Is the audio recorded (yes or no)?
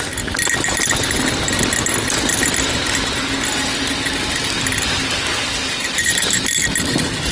yes